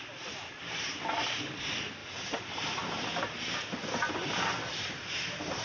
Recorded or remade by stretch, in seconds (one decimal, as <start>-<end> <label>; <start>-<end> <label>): 0.0-5.6 recorded